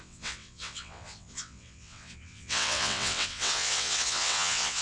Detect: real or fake fake